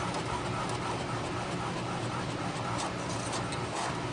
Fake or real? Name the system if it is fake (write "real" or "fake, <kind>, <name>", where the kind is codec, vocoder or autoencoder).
real